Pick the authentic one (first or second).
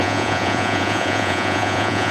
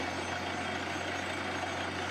second